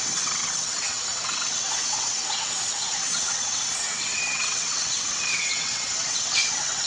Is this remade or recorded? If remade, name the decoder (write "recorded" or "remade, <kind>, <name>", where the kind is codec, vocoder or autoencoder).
remade, vocoder, WaveNeXt